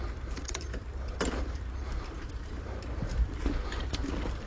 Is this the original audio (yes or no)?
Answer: no